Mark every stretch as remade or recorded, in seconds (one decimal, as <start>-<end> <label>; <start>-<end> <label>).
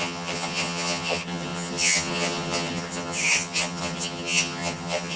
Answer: 0.0-5.2 remade